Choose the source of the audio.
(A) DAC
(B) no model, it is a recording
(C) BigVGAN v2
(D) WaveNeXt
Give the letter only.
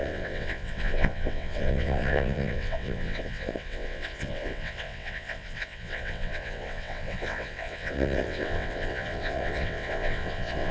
D